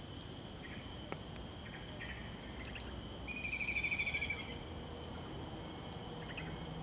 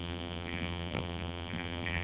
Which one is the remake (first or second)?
second